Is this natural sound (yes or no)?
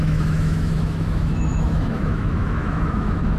no